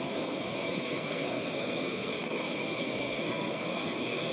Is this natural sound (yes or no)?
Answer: no